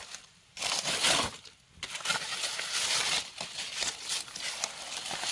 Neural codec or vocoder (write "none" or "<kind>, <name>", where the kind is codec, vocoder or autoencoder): none